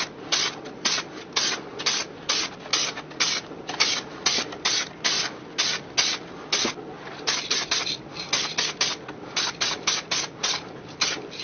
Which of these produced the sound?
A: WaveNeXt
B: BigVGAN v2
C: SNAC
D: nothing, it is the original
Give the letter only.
D